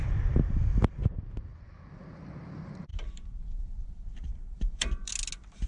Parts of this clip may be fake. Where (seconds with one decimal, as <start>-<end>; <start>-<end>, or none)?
1.0-2.0; 2.9-5.1